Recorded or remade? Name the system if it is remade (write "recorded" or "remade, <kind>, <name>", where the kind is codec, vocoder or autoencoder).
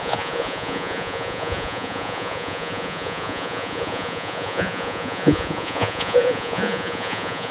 remade, vocoder, Vocos